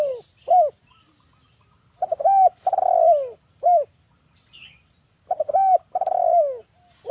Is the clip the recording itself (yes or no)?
yes